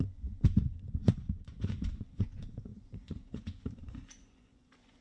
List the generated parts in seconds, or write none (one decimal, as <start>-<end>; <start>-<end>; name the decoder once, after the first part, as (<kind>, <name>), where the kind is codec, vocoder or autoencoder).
0.0-5.0 (vocoder, Vocos)